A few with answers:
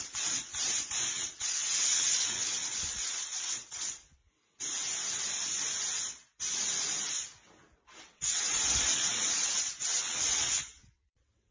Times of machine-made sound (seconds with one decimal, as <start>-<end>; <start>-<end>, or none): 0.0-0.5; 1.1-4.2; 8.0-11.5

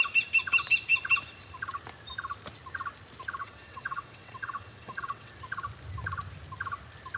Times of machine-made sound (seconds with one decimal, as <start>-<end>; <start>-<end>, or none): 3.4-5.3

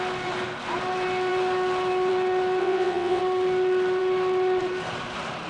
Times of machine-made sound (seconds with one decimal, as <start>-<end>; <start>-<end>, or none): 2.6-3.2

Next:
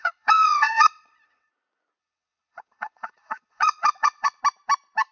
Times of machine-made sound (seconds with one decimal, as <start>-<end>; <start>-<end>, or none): 0.0-1.5; 2.0-4.4

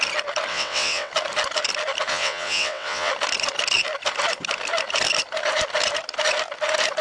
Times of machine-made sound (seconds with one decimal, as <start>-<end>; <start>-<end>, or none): 0.5-1.1; 2.1-3.1

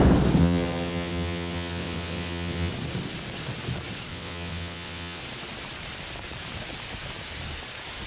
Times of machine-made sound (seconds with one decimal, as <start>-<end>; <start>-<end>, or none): 0.4-2.7; 4.1-5.2